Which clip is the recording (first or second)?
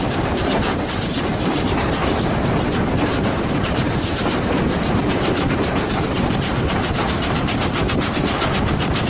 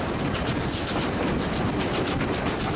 second